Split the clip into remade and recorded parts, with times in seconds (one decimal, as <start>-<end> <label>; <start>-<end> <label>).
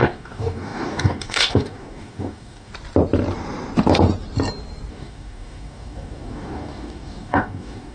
0.0-2.7 remade; 2.7-4.9 recorded; 4.9-7.9 remade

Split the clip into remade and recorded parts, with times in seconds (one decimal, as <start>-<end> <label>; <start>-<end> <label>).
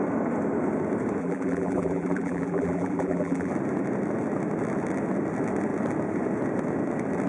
0.0-1.2 recorded; 1.2-3.5 remade; 3.5-7.3 recorded